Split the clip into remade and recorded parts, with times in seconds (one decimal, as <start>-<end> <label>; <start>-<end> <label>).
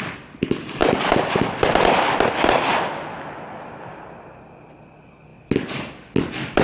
0.0-6.6 recorded